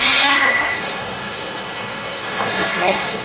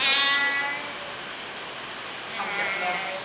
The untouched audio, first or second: second